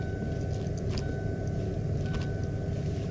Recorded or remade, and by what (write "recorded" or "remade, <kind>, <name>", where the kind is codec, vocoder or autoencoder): recorded